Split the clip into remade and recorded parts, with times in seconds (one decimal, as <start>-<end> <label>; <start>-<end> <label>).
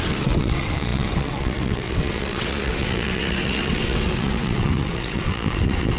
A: 0.0-6.0 remade